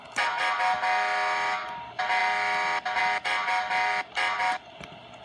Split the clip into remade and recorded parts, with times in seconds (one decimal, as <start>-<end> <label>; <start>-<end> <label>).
0.0-5.2 recorded